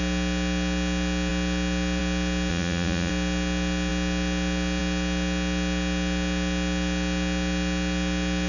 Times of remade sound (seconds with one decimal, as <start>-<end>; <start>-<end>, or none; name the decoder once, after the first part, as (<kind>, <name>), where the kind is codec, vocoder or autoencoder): 2.5-3.1 (vocoder, Vocos)